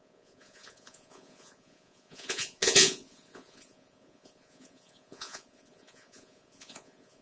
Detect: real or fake fake